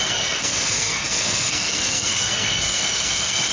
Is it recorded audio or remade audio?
remade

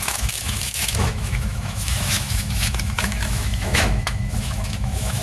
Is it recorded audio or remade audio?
remade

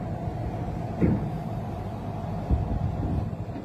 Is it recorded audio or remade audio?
recorded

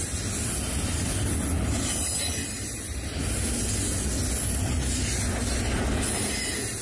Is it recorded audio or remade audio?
recorded